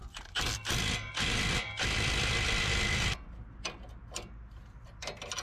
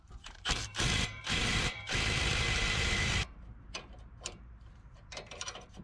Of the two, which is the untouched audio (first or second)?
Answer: first